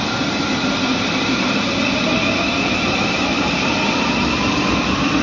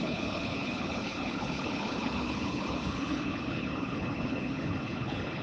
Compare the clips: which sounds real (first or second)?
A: first